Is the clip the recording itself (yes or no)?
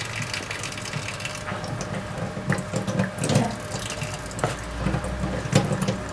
yes